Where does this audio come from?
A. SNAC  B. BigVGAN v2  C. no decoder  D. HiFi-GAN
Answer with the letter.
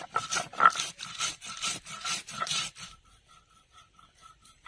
B